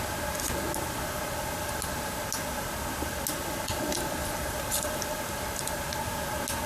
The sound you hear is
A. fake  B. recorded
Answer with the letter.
B